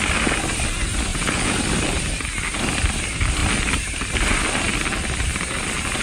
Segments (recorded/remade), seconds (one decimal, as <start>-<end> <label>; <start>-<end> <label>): 0.0-1.1 recorded; 1.1-1.6 remade; 1.6-6.0 recorded